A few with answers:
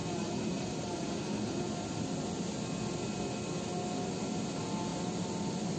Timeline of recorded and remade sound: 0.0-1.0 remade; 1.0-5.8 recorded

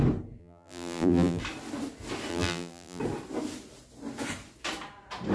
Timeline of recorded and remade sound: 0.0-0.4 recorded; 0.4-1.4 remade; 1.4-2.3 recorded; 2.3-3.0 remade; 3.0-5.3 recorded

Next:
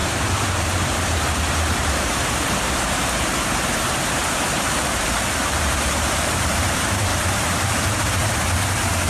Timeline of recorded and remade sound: 0.0-9.1 remade

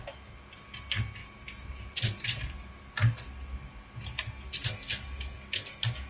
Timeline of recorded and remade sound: 0.0-1.2 recorded; 1.2-2.8 remade; 2.8-6.1 recorded